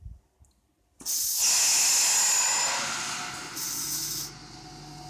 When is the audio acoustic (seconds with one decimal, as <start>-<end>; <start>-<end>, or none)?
0.0-3.8; 4.3-5.1